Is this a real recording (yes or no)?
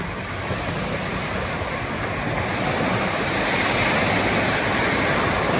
yes